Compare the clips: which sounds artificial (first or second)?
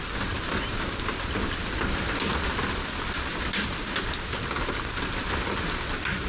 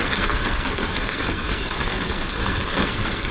second